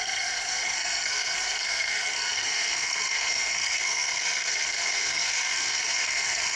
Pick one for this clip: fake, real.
fake